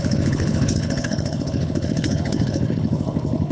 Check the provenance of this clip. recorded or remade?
remade